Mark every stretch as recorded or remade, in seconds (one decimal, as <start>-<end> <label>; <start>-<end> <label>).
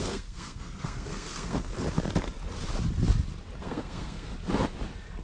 0.0-1.7 remade; 1.7-3.6 recorded; 3.6-4.3 remade; 4.3-5.2 recorded